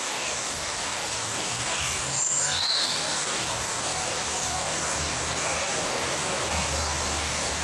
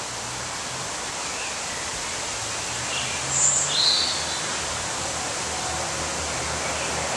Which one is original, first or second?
second